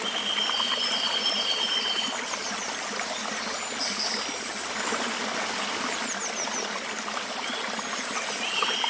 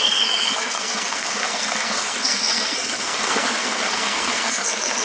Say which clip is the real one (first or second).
first